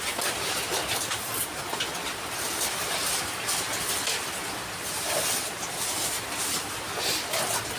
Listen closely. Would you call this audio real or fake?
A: real